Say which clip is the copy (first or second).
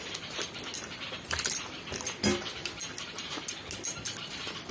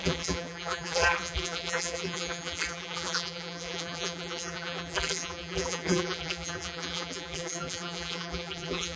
second